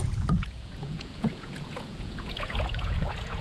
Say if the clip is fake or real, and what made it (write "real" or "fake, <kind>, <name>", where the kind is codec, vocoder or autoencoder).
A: fake, vocoder, Vocos